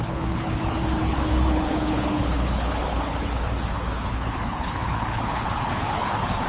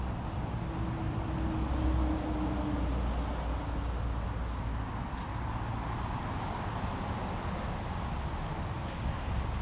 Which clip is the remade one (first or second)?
first